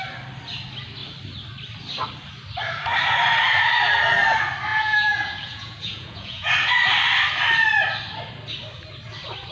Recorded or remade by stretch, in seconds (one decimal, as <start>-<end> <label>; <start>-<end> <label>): 0.0-4.7 recorded; 4.7-6.5 remade; 6.5-9.5 recorded

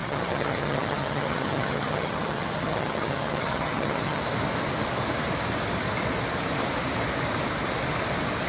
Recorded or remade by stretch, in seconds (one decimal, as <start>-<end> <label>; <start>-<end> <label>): 0.0-4.2 remade; 4.2-8.5 recorded

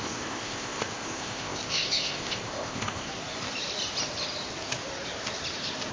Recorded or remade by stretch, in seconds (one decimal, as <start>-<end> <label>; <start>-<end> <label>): 0.0-3.1 remade; 3.1-5.9 recorded